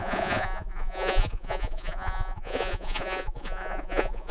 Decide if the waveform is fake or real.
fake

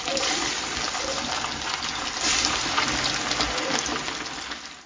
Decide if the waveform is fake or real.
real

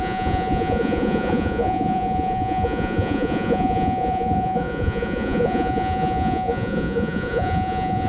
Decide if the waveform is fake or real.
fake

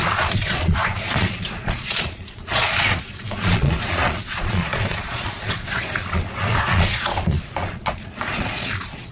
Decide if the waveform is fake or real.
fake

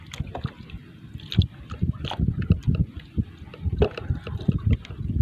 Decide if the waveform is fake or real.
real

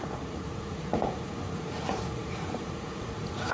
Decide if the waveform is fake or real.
fake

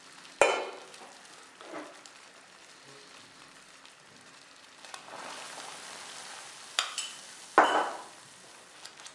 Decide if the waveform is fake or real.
real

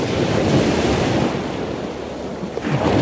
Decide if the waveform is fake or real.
real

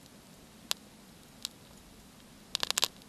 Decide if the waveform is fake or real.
real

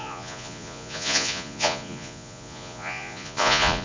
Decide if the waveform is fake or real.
fake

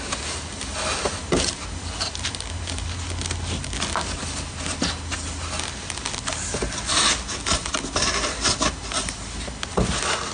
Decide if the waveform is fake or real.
real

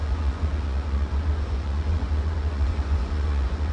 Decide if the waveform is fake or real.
fake